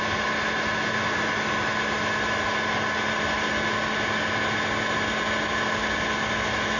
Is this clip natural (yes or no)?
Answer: yes